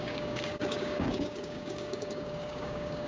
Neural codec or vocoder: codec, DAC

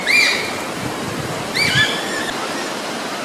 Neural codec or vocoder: none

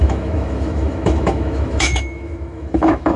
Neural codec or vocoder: autoencoder, DAC-VAE